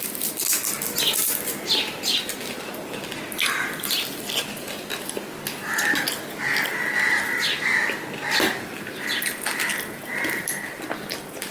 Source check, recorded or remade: recorded